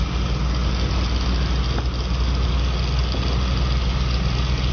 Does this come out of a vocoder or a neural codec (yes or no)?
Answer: no